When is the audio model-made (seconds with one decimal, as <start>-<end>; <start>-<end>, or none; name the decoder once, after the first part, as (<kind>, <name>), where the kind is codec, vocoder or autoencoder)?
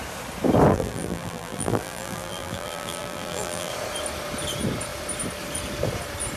0.7-3.7 (vocoder, BigVGAN v2)